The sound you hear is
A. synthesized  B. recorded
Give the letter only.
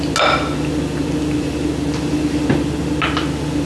B